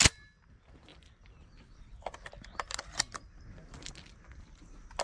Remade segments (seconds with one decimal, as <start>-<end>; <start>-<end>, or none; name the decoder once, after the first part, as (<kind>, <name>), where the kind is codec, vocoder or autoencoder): none